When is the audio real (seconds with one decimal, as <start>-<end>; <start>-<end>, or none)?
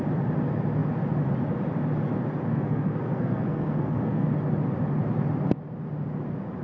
0.0-2.5; 4.3-6.6